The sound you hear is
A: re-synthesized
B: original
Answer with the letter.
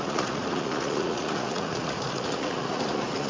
A